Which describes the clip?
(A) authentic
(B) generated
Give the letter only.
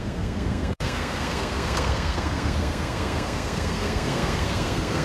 B